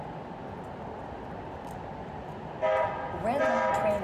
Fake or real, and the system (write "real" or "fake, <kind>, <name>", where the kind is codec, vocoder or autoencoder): real